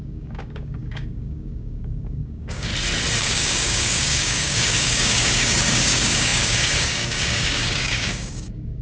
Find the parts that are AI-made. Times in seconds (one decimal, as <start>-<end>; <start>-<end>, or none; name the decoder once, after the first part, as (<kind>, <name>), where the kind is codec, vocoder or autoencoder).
0.0-2.7 (codec, DAC); 3.2-8.8